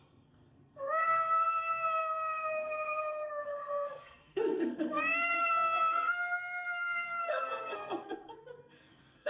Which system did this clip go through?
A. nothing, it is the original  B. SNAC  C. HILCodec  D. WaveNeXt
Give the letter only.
B